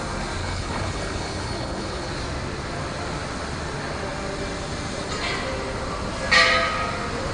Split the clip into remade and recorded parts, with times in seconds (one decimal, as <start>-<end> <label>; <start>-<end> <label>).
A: 0.0-0.4 recorded; 0.4-2.1 remade; 2.1-7.3 recorded